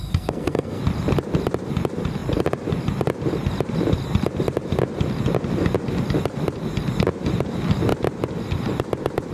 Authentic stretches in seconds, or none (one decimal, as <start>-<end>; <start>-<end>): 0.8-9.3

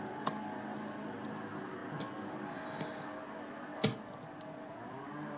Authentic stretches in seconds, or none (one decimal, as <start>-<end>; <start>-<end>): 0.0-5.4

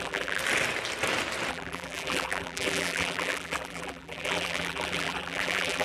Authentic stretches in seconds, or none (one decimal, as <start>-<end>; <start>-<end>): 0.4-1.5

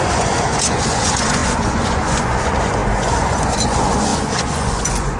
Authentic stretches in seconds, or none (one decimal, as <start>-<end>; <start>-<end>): none